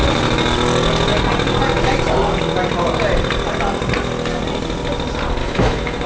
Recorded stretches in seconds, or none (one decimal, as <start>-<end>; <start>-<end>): 0.0-5.4